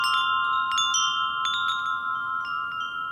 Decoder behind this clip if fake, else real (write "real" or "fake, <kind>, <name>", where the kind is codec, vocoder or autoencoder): real